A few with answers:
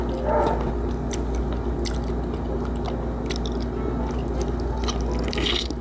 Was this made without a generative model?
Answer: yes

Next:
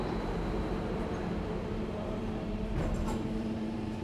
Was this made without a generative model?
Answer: no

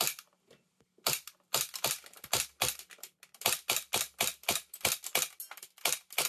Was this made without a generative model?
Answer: yes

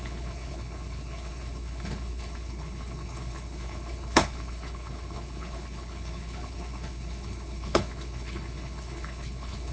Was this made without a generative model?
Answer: no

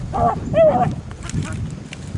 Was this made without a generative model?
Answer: yes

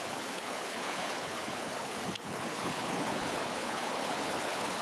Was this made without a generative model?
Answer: no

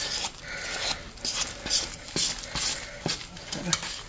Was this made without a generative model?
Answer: yes